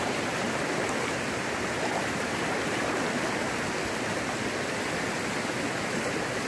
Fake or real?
real